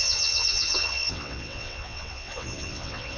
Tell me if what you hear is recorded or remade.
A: remade